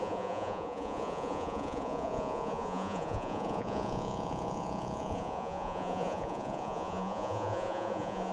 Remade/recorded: remade